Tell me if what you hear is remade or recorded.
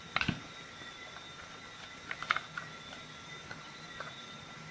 recorded